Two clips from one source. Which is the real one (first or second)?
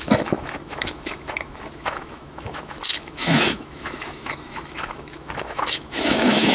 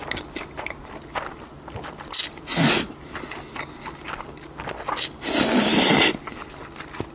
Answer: second